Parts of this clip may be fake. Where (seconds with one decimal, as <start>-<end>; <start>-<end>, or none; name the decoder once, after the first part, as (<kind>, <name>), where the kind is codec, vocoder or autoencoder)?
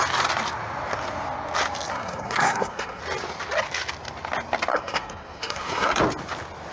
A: 1.9-3.0 (codec, SNAC); 4.7-6.0